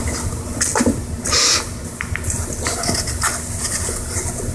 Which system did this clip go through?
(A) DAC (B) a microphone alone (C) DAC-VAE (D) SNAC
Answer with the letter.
B